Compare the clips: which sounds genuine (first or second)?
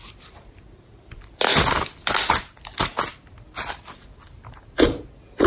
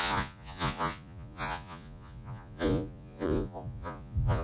first